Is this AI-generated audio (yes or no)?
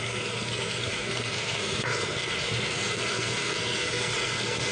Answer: yes